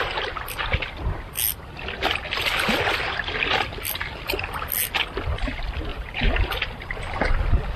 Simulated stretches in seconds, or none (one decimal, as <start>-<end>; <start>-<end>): 5.9-7.0